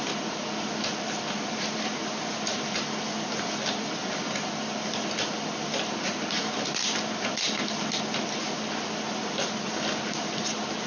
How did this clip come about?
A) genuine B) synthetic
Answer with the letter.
A